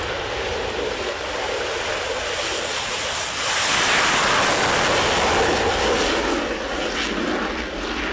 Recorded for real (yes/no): yes